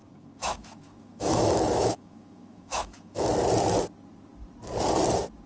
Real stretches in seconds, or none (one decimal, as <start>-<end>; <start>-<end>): 3.3-5.5